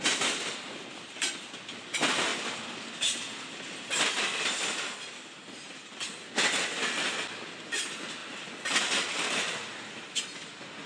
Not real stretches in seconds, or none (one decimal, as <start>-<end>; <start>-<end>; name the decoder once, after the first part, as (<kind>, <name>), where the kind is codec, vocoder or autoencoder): none